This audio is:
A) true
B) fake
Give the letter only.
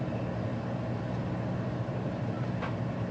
A